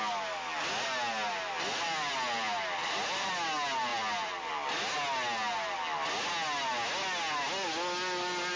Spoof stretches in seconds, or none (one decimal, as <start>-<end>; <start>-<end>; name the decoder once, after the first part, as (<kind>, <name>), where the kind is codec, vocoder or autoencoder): 1.7-3.3 (vocoder, BigVGAN v2); 3.9-4.5